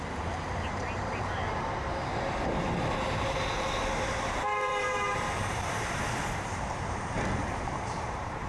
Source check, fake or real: fake